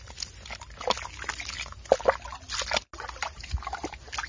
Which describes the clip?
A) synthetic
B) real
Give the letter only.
B